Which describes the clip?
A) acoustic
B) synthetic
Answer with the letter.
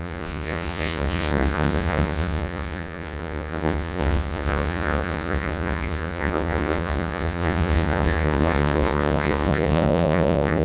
B